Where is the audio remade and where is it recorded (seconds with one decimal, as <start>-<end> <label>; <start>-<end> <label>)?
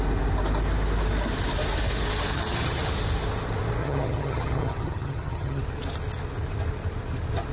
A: 0.0-2.3 recorded; 2.3-2.9 remade; 2.9-3.8 recorded; 3.8-5.6 remade; 5.6-7.5 recorded